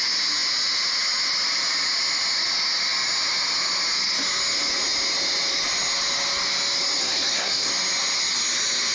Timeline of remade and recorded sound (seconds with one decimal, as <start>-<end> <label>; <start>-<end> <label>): 0.0-7.0 recorded; 7.0-7.7 remade; 7.7-8.9 recorded